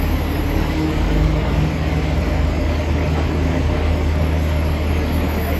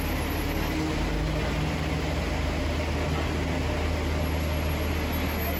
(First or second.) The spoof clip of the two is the first